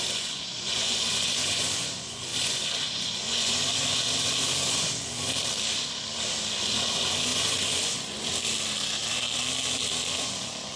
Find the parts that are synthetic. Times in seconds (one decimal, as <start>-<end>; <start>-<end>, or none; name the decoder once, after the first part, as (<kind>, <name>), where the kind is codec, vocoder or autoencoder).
0.0-5.3 (vocoder, Vocos); 6.5-8.3; 10.2-10.8

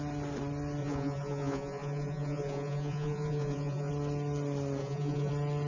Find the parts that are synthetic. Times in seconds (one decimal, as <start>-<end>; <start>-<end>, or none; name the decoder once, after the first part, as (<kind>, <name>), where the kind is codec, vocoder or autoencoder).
0.8-3.9 (vocoder, Vocos); 4.8-5.3

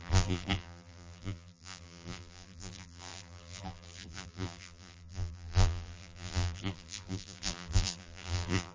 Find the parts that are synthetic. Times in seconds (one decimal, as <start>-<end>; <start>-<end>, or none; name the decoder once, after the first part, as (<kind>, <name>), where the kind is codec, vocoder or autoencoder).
0.0-8.7 (vocoder, BigVGAN v2)

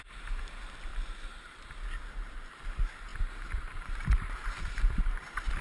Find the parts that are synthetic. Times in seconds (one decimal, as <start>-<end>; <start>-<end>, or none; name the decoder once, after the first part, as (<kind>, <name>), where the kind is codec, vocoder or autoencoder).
0.9-1.7 (vocoder, BigVGAN v2); 3.1-5.6